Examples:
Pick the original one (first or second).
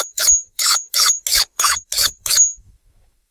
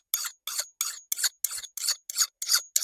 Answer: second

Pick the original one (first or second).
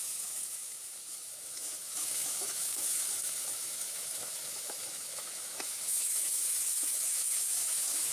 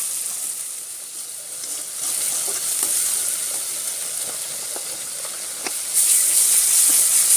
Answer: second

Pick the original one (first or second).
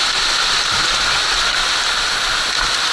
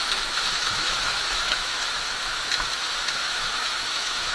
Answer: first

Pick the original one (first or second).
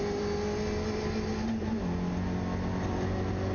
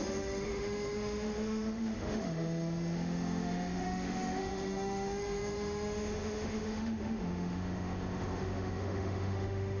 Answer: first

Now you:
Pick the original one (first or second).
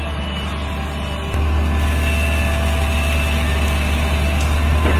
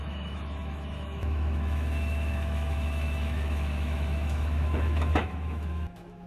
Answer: first